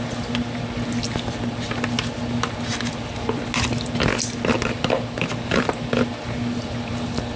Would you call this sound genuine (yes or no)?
yes